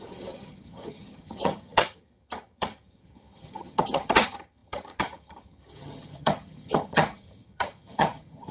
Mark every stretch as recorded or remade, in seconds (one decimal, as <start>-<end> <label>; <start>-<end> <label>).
0.0-8.5 remade

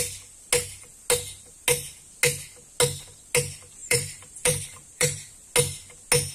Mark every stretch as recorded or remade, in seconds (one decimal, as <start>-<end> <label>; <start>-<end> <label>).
0.0-3.8 recorded; 3.8-5.3 remade; 5.3-6.3 recorded

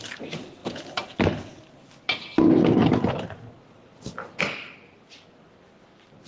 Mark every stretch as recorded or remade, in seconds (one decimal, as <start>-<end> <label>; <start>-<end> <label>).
0.0-6.3 recorded

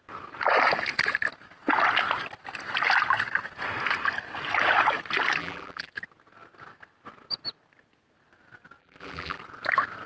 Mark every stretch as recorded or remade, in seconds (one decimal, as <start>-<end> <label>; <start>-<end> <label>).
0.0-5.4 recorded; 5.4-5.9 remade; 5.9-8.8 recorded; 8.8-9.4 remade; 9.4-10.1 recorded

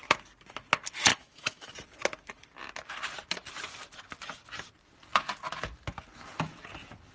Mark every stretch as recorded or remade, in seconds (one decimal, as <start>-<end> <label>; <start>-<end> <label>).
0.0-1.1 recorded; 1.1-1.7 remade; 1.7-7.1 recorded

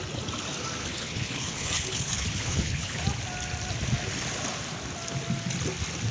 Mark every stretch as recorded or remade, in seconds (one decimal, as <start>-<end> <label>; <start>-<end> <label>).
0.0-0.8 recorded; 0.8-3.0 remade; 3.0-6.1 recorded